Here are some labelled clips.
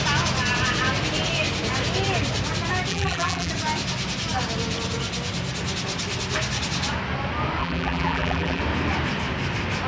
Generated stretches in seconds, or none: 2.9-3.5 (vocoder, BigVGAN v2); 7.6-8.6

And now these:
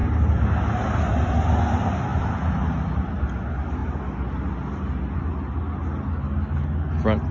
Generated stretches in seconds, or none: 2.1-3.3 (vocoder, BigVGAN v2)

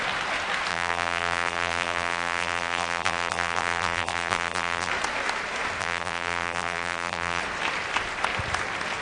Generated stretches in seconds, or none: 0.7-4.9 (vocoder, BigVGAN v2); 5.8-7.4

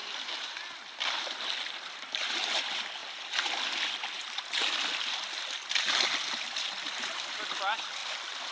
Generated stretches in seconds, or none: 1.9-3.0 (vocoder, BigVGAN v2); 5.9-8.5

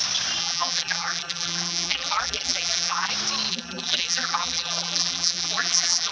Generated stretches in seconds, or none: 0.4-3.1 (vocoder, BigVGAN v2); 3.5-6.1